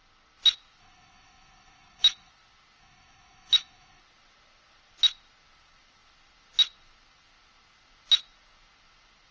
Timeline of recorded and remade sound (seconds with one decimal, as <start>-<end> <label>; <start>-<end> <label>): 0.0-0.8 recorded; 0.8-2.3 remade; 2.3-2.8 recorded; 2.8-4.0 remade; 4.0-9.3 recorded